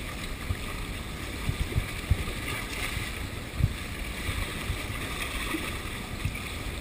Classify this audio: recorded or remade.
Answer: recorded